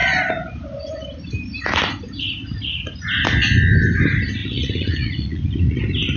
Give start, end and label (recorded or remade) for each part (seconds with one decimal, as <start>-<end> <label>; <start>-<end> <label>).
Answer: 0.0-4.4 recorded; 4.4-5.8 remade; 5.8-6.2 recorded

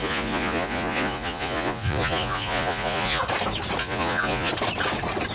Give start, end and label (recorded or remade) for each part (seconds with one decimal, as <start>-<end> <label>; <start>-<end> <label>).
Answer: 0.0-3.2 remade; 3.2-3.8 recorded; 3.8-4.5 remade; 4.5-5.3 recorded

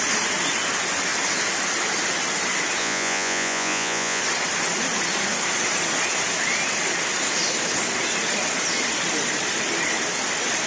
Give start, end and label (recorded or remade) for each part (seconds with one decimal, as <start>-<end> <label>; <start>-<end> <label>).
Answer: 0.0-2.8 recorded; 2.8-4.2 remade; 4.2-10.7 recorded

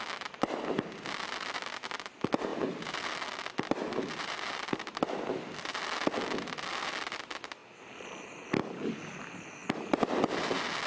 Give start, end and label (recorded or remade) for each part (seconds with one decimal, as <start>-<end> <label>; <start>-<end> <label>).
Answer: 0.0-10.9 recorded

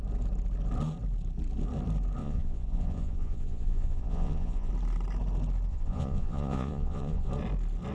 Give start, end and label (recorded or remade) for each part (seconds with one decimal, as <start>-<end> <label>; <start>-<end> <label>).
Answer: 0.0-2.2 recorded; 2.2-4.7 remade; 4.7-5.7 recorded; 5.7-7.3 remade; 7.3-7.9 recorded

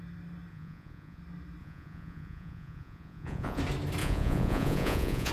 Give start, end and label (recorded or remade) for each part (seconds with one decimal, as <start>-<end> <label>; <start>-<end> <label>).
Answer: 0.0-0.5 recorded; 0.5-1.2 remade; 1.2-1.6 recorded; 1.6-3.6 remade; 3.6-4.0 recorded; 4.0-5.3 remade